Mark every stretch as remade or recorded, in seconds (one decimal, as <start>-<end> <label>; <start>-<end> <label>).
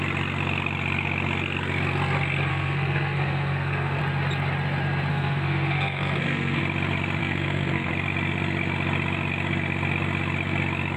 0.0-2.5 recorded; 2.5-4.0 remade; 4.0-5.1 recorded; 5.1-6.6 remade; 6.6-7.2 recorded; 7.2-7.9 remade; 7.9-11.0 recorded